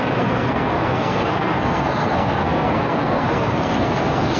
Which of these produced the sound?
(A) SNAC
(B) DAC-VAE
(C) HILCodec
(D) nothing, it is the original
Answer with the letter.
A